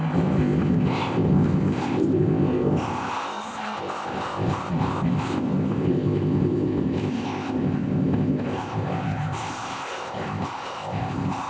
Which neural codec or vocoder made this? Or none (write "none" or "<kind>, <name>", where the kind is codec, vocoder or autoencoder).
codec, ZipCodec